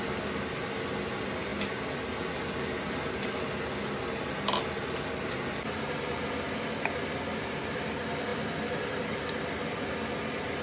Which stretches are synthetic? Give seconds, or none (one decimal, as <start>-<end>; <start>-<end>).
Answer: 8.3-9.0